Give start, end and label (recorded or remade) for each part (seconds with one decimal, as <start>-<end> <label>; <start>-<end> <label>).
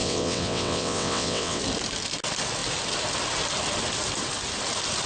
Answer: 0.0-1.6 remade; 1.6-5.1 recorded